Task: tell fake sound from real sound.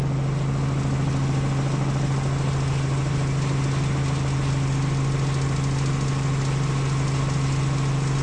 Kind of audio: real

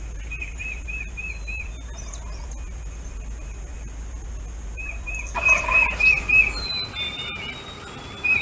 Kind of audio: real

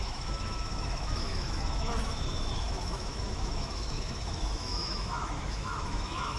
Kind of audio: fake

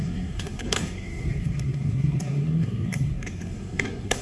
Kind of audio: fake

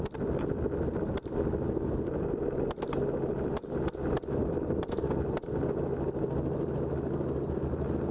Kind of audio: real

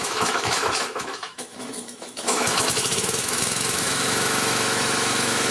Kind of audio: fake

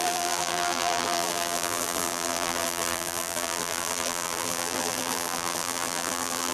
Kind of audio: fake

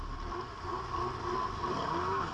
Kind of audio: real